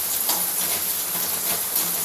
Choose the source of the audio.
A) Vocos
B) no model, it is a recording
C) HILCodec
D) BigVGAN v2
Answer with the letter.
B